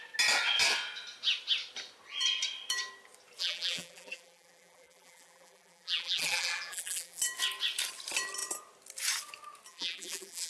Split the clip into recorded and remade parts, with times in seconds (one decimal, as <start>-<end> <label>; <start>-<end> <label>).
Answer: 0.0-3.4 recorded; 3.4-7.2 remade; 7.2-9.7 recorded; 9.7-10.5 remade